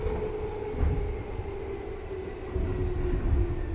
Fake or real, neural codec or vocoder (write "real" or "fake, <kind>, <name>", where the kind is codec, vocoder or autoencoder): real